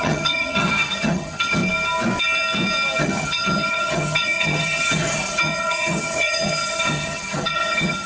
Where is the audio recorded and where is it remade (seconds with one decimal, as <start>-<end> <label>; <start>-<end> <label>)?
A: 0.0-1.6 remade; 1.6-3.0 recorded; 3.0-8.1 remade